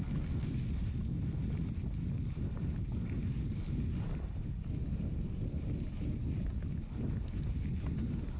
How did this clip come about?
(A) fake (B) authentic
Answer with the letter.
B